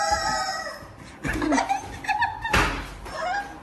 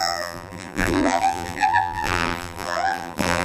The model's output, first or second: second